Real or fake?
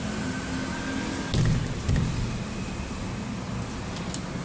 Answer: real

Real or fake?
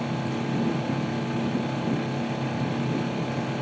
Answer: real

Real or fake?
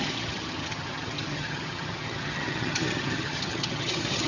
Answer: fake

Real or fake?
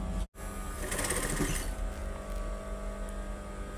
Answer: real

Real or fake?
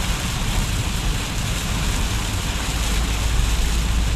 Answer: real